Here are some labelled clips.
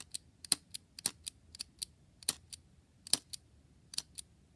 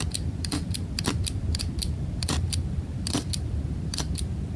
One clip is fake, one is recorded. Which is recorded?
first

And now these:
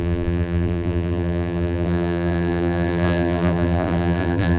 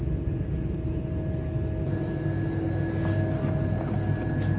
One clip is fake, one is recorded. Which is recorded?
second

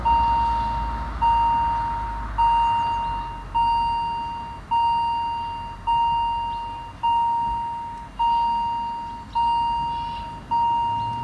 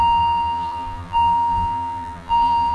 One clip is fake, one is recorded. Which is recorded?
first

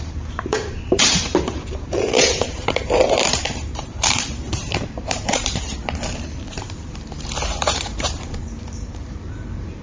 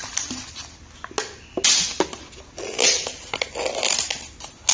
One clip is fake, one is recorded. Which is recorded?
second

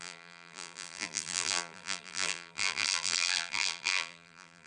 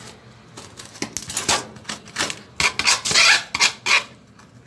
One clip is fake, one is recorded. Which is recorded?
second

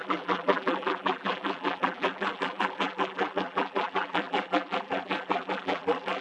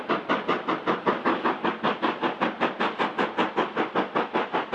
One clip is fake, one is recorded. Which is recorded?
second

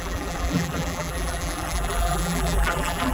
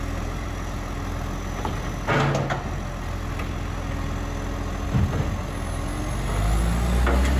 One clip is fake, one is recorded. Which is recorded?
second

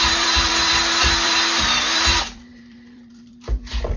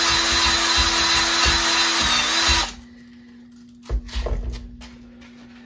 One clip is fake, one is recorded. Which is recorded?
second